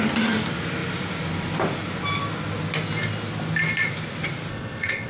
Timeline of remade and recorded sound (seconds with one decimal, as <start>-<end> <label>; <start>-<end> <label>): 0.0-4.5 recorded; 4.5-5.1 remade

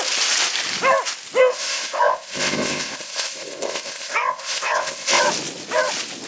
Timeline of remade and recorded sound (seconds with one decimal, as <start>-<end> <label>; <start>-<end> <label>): 0.0-1.4 recorded; 1.4-5.2 remade; 5.2-6.3 recorded